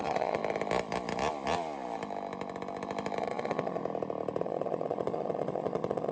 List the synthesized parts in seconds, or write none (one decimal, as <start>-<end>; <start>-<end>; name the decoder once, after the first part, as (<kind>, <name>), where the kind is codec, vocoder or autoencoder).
0.0-0.4 (vocoder, Vocos); 3.2-3.8; 4.4-6.1